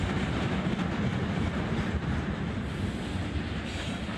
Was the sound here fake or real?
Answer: real